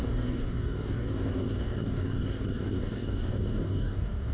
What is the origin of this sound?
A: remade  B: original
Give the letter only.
A